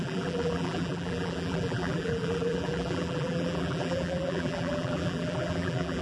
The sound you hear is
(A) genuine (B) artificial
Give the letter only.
B